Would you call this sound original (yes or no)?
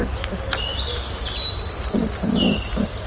yes